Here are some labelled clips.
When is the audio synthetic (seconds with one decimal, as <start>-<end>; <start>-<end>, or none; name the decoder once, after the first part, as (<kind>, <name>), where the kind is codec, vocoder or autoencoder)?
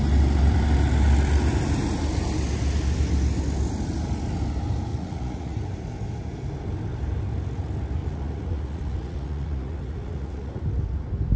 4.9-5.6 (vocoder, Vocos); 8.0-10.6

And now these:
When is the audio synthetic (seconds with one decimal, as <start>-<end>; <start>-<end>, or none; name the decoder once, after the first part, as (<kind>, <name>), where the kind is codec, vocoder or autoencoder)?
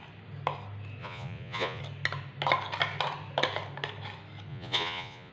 1.0-1.8 (vocoder, Vocos); 4.5-5.3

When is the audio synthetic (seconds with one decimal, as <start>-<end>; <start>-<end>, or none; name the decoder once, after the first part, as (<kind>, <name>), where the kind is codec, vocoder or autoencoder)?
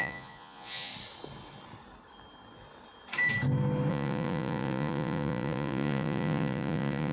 0.0-0.9 (vocoder, Vocos); 3.9-7.1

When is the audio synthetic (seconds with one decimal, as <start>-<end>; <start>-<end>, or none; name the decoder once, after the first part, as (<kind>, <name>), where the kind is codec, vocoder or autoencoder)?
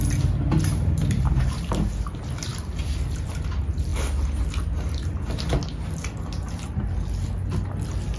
none